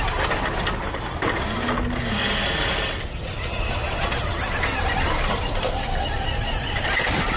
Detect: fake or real real